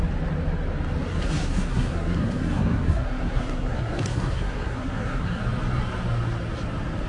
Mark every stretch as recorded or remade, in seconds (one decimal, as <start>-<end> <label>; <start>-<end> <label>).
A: 0.0-1.1 recorded; 1.1-5.4 remade; 5.4-7.1 recorded